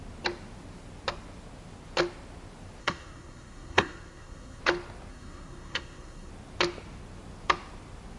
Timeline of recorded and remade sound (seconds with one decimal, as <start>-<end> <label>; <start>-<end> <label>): 0.0-2.8 recorded; 2.8-4.6 remade; 4.6-5.1 recorded; 5.1-6.3 remade; 6.3-8.2 recorded